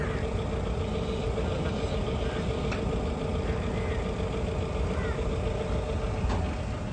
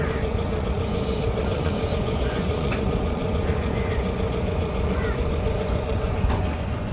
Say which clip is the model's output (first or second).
second